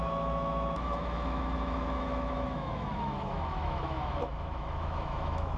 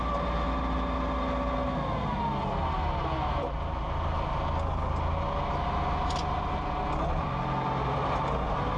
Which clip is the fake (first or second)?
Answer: first